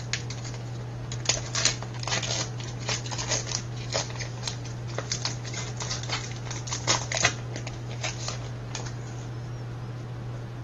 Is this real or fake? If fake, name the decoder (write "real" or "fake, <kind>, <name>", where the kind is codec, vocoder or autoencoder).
real